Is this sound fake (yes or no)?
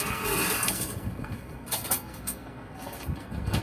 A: yes